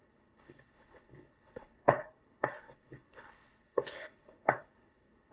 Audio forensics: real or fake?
fake